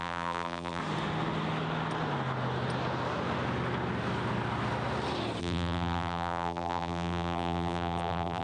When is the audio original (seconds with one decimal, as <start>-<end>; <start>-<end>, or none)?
0.8-5.4